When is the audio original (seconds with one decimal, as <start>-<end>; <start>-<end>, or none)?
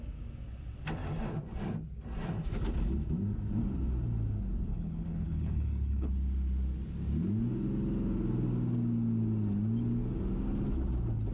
0.0-4.7; 6.1-11.3